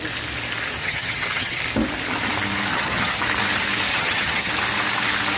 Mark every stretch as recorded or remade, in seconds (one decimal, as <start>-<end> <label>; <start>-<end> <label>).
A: 0.0-0.8 recorded; 0.8-1.6 remade; 1.6-2.7 recorded; 2.7-3.2 remade; 3.2-3.9 recorded; 3.9-4.5 remade; 4.5-5.4 recorded